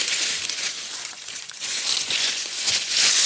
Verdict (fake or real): fake